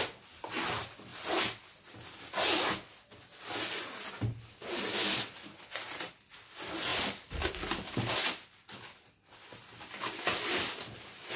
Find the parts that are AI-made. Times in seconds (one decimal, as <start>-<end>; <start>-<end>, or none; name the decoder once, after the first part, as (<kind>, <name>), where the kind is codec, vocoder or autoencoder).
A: none